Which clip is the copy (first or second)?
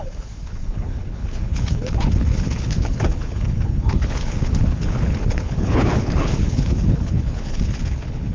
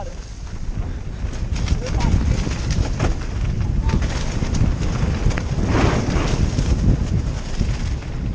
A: first